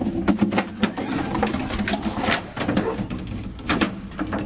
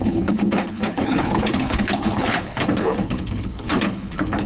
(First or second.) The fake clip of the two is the second